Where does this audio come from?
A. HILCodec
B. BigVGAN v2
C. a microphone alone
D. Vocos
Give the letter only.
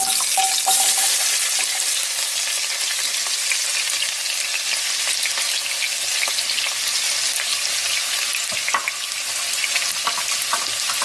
C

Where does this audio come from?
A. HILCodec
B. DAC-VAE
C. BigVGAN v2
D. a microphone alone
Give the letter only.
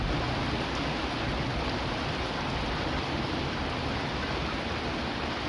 D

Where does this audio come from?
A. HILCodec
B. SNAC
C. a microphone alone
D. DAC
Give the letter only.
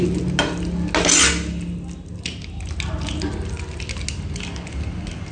C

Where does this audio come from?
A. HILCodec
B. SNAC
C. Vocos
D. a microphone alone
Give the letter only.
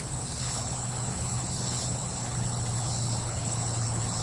A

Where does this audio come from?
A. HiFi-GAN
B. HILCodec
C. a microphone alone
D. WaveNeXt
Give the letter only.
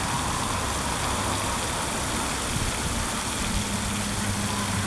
C